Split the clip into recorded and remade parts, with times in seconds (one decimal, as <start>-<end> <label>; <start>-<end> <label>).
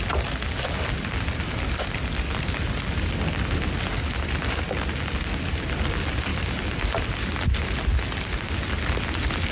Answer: 0.0-9.5 recorded